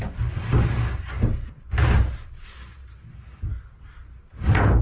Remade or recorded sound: recorded